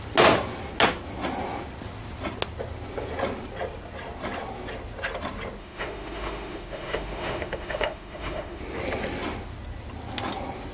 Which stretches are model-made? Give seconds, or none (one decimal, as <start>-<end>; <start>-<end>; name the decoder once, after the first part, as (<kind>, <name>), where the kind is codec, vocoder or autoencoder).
5.6-8.6 (autoencoder, DAC-VAE)